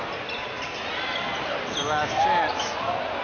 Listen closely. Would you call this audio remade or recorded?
recorded